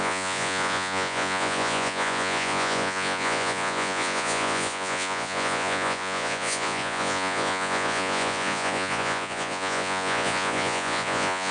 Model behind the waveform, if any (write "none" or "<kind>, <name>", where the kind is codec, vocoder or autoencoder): vocoder, Vocos